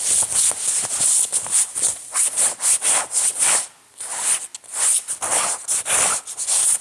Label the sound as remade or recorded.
recorded